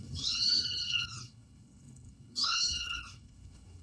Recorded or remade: remade